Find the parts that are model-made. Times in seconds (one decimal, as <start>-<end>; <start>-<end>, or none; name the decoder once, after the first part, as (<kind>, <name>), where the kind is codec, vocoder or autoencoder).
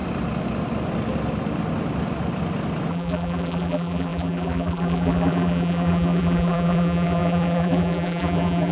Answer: 2.9-8.7 (vocoder, BigVGAN v2)